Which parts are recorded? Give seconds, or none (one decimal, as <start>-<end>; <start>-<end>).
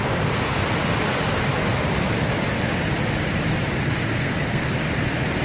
0.0-4.2; 4.7-5.4